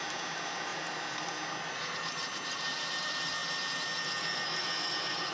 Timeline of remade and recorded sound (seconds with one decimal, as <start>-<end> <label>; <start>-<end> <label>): 0.0-5.3 recorded